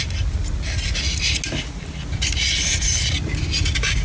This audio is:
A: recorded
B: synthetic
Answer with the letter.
A